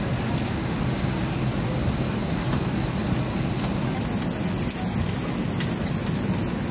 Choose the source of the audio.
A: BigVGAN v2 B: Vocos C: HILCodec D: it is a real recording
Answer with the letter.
D